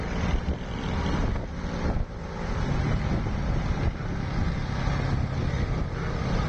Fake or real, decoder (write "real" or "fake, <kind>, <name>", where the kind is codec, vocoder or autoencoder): real